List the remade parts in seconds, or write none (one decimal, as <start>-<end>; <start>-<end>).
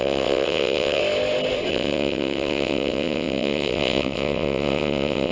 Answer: 0.0-1.0; 1.7-5.3